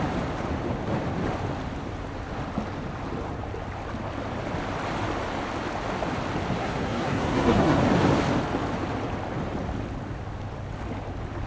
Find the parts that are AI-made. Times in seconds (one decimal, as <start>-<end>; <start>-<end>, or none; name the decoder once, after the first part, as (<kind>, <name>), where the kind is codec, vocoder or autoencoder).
6.6-7.8 (codec, SNAC)